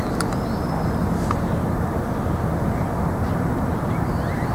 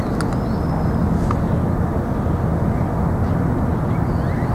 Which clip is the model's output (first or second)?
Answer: first